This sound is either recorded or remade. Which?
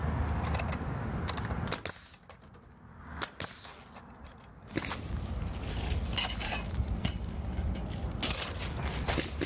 recorded